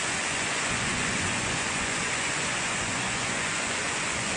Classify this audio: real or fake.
fake